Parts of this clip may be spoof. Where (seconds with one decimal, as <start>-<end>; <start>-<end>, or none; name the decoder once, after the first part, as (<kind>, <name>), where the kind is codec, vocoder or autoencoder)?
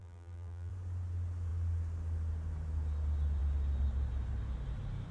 0.0-0.7 (vocoder, BigVGAN v2)